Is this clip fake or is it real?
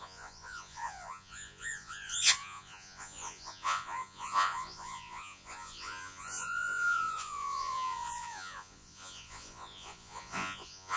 fake